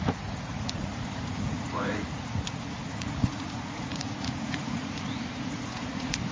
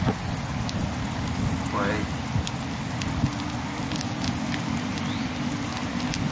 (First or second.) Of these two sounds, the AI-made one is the first